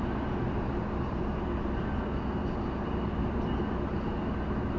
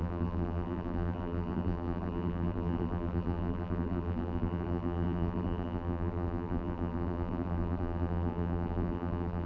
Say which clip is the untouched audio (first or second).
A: first